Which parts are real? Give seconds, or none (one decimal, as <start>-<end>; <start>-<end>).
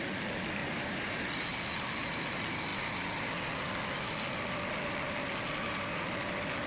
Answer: 0.0-0.6; 1.2-6.7